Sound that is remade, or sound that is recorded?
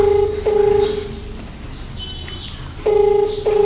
recorded